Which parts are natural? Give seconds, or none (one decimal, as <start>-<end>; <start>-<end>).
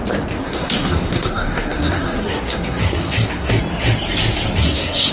0.0-0.4; 3.5-4.6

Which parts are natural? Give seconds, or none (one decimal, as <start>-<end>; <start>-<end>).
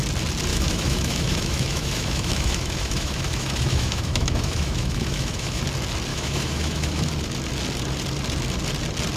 0.0-0.5; 5.6-6.1; 7.1-9.2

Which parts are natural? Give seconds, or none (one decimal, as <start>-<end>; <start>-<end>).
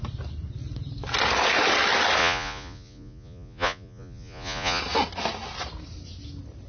0.0-2.2; 4.8-6.7